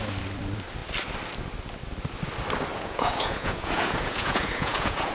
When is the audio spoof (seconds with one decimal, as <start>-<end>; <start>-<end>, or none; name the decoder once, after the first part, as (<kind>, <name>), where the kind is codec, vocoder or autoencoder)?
2.7-5.1 (vocoder, Vocos)